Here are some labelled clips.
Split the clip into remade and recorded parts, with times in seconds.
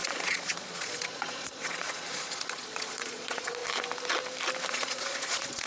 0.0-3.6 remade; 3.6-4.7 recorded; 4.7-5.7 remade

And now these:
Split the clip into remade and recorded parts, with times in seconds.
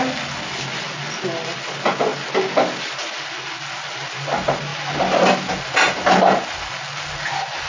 0.0-7.7 recorded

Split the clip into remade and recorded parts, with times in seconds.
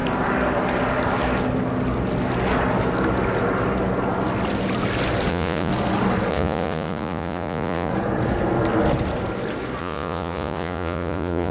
0.0-5.3 recorded; 5.3-5.7 remade; 5.7-6.3 recorded; 6.3-7.9 remade; 7.9-9.8 recorded; 9.8-11.5 remade